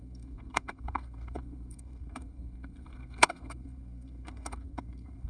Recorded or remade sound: remade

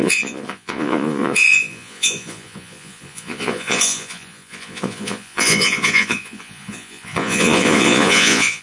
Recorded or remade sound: remade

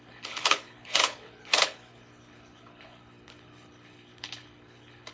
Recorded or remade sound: remade